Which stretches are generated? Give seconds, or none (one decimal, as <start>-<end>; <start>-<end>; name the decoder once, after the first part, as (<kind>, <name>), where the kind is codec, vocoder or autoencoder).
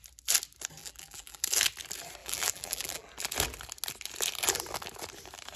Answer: 0.8-1.4 (vocoder, BigVGAN v2); 2.2-3.1